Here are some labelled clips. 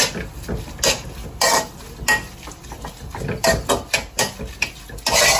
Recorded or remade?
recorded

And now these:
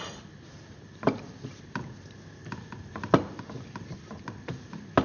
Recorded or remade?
remade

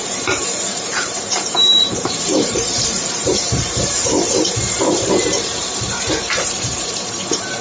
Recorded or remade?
remade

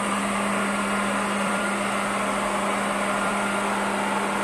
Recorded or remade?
remade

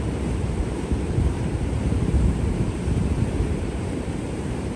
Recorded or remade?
remade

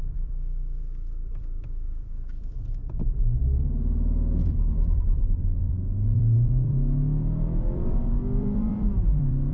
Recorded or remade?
remade